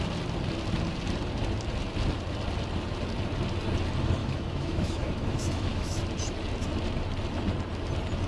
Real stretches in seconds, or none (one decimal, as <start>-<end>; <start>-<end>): 0.0-4.2; 6.0-8.3